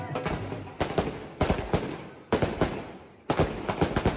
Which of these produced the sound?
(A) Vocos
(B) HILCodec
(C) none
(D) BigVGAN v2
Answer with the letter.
C